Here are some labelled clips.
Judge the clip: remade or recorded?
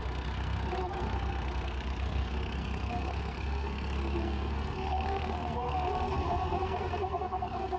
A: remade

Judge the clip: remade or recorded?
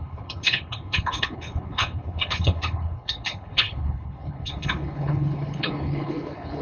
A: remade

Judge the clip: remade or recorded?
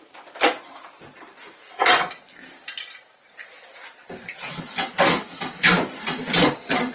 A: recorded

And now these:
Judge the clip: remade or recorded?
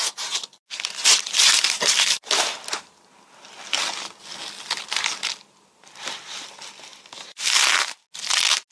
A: recorded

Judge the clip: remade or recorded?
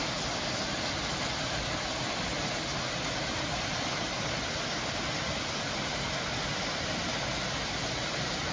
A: recorded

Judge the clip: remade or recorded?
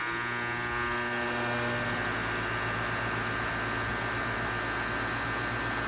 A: recorded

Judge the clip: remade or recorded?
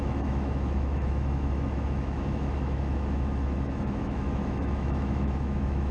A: remade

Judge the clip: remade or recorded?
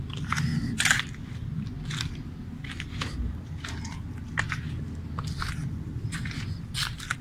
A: recorded